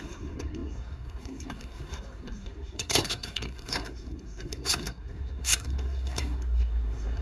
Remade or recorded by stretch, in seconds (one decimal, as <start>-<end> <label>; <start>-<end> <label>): 0.0-7.2 remade